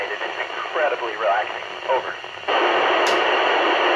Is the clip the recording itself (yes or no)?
yes